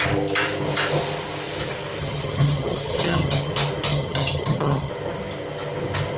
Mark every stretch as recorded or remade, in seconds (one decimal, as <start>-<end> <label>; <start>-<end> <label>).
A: 0.0-2.0 recorded; 2.0-3.5 remade; 3.5-3.9 recorded; 3.9-4.9 remade; 4.9-6.2 recorded